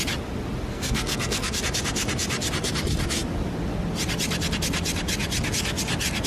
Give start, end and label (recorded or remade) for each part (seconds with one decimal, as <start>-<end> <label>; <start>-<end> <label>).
0.0-0.7 recorded; 0.7-1.6 remade; 1.6-6.3 recorded